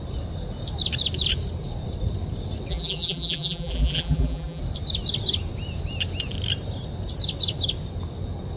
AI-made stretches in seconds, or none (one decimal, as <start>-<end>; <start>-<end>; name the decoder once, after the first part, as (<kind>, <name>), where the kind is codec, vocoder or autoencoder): 2.7-4.6 (vocoder, BigVGAN v2)

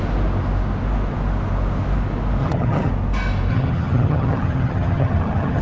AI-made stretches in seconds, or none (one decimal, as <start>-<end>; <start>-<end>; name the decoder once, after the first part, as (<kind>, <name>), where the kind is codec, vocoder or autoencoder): 2.4-2.9 (vocoder, HiFi-GAN); 3.5-5.6

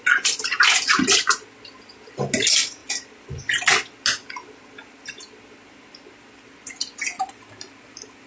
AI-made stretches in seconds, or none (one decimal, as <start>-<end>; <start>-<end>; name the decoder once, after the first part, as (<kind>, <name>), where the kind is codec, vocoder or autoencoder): none

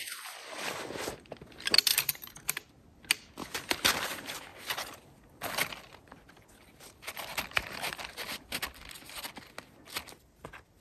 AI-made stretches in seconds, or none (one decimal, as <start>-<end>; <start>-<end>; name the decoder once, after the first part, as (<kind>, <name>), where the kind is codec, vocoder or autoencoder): 1.9-2.7 (vocoder, BigVGAN v2)

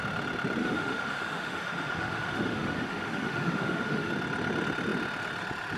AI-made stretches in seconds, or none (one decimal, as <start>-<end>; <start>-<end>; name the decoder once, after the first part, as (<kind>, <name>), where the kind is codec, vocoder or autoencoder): 0.6-4.1 (autoencoder, DAC-VAE)

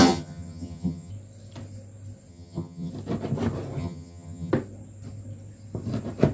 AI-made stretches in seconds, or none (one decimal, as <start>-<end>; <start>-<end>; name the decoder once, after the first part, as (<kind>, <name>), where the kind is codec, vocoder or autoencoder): 0.0-1.1 (vocoder, HiFi-GAN); 2.3-2.9; 3.8-4.5

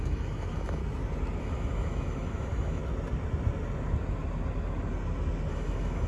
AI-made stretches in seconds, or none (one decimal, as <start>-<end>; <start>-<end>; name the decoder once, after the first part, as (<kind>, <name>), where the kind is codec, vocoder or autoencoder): 0.0-0.8 (autoencoder, DAC-VAE); 1.4-2.8; 5.5-6.1

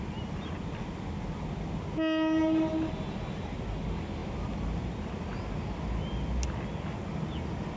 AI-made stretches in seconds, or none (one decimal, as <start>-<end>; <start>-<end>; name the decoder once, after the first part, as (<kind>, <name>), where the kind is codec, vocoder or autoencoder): none